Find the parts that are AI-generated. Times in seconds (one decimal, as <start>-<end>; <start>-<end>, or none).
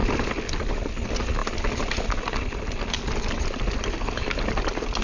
none